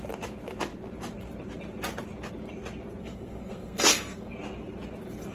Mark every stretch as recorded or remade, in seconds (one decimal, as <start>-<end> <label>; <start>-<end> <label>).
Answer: 0.0-3.0 recorded; 3.0-4.3 remade; 4.3-5.3 recorded